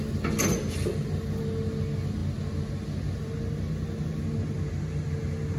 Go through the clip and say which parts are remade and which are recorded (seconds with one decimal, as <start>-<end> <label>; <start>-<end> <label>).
0.0-0.9 recorded; 0.9-1.4 remade; 1.4-5.6 recorded